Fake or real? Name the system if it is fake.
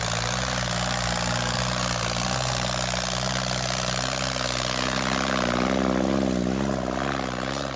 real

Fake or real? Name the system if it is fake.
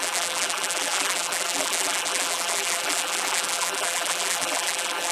fake, vocoder, BigVGAN v2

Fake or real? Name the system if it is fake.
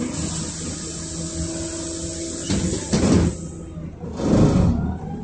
real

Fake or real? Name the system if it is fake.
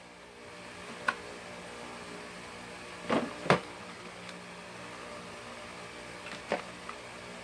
real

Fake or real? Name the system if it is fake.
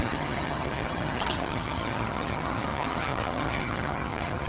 fake, vocoder, HiFi-GAN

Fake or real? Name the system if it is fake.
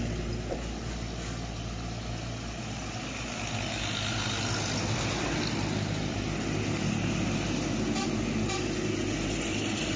real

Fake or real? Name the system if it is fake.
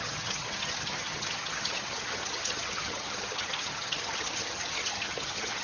fake, vocoder, HiFi-GAN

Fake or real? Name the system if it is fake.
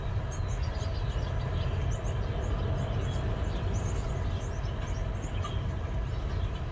real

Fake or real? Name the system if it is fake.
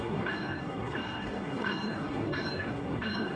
fake, codec, SNAC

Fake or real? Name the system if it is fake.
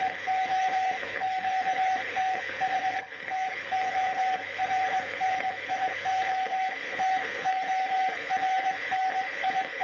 fake, codec, HILCodec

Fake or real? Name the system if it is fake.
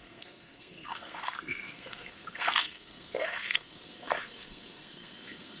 fake, codec, SNAC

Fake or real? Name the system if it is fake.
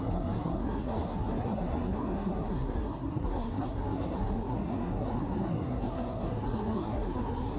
fake, codec, SNAC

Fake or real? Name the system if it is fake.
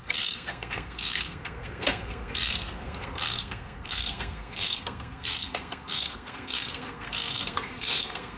fake, codec, SNAC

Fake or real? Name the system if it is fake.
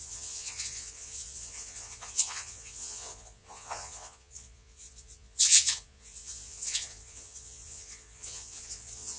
fake, vocoder, Vocos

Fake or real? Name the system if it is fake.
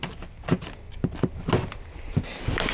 real